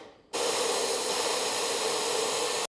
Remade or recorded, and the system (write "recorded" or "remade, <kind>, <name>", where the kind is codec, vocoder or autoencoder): recorded